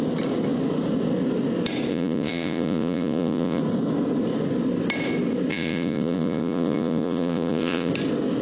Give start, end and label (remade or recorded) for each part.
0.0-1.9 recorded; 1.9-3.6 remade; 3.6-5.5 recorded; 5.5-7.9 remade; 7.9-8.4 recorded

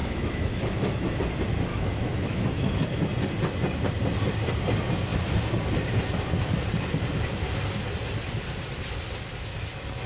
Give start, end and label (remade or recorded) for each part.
0.0-1.2 remade; 1.2-1.7 recorded; 1.7-2.7 remade; 2.7-10.1 recorded

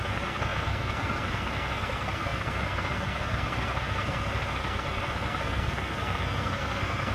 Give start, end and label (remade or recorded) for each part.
0.0-7.1 remade